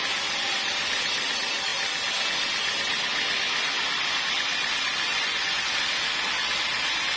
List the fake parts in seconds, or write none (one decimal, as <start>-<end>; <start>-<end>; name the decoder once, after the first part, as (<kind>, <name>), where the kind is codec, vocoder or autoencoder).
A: 5.1-5.7 (vocoder, Vocos)